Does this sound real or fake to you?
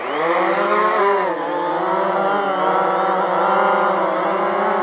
real